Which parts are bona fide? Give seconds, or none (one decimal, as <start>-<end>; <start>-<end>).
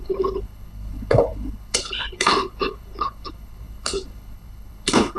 none